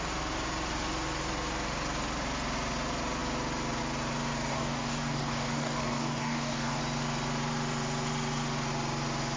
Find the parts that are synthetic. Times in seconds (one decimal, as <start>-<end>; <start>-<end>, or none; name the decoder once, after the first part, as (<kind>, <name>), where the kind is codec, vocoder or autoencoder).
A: 4.5-6.8 (codec, DAC)

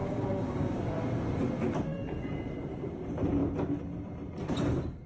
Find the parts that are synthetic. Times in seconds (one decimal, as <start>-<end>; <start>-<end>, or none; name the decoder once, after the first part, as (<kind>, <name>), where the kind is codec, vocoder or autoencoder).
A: 0.0-1.0 (codec, DAC)

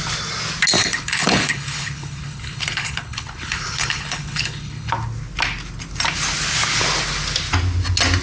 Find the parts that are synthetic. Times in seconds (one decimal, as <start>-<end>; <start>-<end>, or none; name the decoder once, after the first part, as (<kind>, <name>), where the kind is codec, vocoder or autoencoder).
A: 0.8-4.9 (codec, HILCodec)